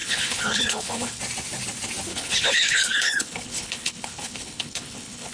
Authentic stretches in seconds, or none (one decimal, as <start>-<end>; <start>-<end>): 1.2-2.1